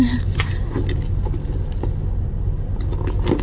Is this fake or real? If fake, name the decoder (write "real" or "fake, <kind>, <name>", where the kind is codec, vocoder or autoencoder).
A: real